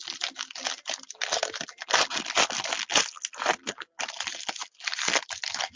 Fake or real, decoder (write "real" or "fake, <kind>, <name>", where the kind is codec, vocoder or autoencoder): real